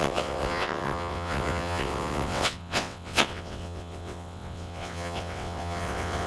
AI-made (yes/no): yes